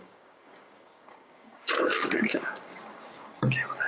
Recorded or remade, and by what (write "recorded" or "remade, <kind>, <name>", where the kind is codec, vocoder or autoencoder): remade, codec, DAC